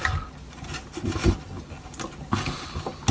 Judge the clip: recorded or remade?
recorded